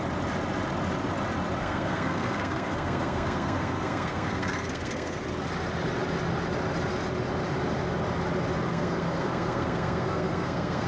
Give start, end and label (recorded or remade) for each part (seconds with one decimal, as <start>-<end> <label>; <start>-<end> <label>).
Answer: 0.0-1.6 recorded; 1.6-5.2 remade; 5.2-8.7 recorded; 8.7-10.9 remade